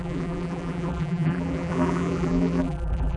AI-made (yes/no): yes